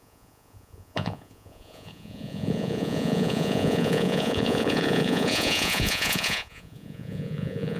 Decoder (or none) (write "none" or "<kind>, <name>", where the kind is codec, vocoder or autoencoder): vocoder, Vocos